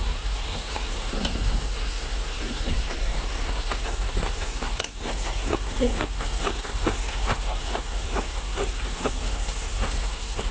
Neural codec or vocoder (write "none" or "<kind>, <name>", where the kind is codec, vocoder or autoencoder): codec, SNAC